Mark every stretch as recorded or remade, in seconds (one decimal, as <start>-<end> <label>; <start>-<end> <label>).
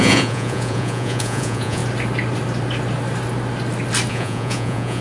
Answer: 0.0-1.8 remade; 1.8-4.1 recorded; 4.1-5.0 remade